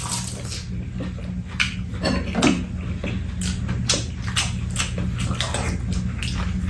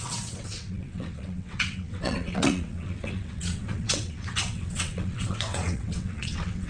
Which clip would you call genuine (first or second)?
first